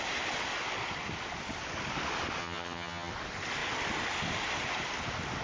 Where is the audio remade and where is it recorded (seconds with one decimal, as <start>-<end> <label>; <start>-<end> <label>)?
0.0-2.4 recorded; 2.4-3.1 remade; 3.1-5.4 recorded